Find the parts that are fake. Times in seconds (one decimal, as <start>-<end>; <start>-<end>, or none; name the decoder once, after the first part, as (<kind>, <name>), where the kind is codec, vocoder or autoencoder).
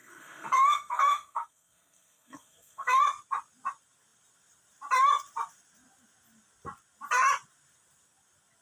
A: 0.0-3.0 (codec, SNAC)